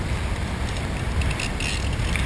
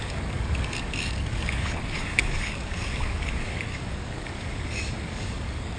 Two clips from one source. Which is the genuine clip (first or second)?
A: first